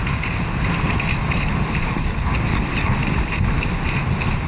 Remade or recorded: recorded